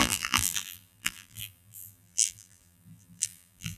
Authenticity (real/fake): fake